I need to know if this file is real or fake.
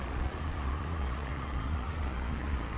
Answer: fake